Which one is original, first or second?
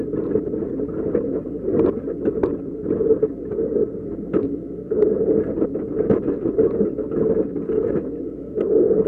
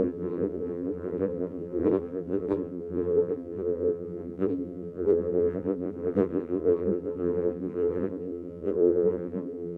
first